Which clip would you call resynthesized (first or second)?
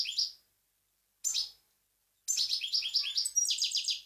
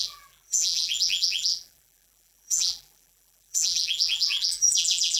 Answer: second